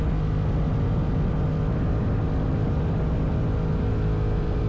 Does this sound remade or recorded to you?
recorded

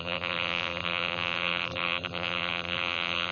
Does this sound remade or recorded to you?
remade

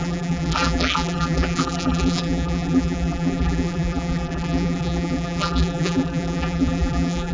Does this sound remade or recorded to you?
remade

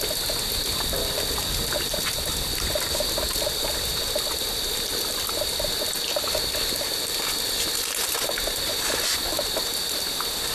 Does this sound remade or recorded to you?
recorded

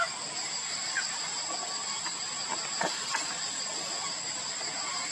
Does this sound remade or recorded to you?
recorded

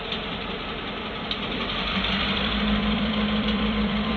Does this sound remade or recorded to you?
remade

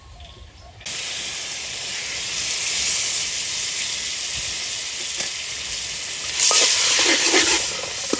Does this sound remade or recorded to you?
recorded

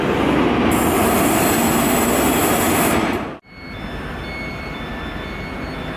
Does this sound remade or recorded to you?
recorded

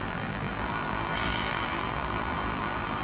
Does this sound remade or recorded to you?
remade